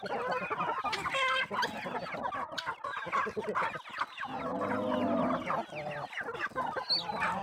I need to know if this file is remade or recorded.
recorded